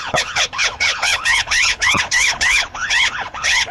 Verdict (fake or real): fake